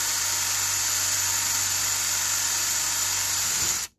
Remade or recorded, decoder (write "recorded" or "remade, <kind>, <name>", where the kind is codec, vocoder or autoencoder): recorded